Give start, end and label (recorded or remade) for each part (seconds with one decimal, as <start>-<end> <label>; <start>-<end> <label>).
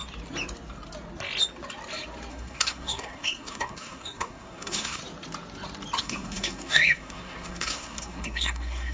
0.0-2.3 recorded; 2.3-5.0 remade; 5.0-6.0 recorded; 6.0-8.9 remade